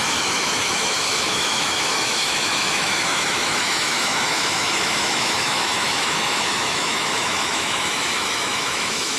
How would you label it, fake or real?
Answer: fake